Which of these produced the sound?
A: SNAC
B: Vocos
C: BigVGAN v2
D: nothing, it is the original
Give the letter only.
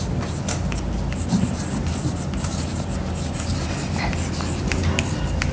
D